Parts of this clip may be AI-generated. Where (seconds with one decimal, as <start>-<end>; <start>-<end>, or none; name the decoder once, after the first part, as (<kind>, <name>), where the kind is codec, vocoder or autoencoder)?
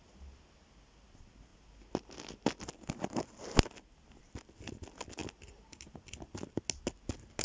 none